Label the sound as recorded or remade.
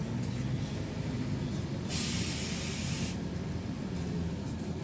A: recorded